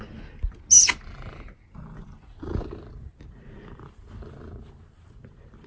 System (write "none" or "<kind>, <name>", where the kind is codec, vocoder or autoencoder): none